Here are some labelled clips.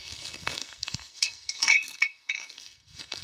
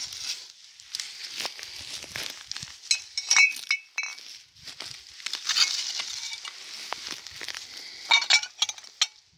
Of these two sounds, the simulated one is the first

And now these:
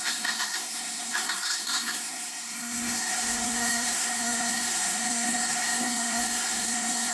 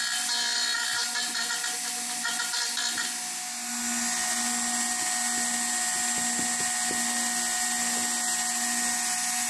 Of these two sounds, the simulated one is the first